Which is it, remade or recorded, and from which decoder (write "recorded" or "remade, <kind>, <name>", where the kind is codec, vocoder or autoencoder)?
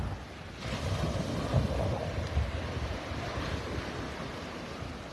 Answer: recorded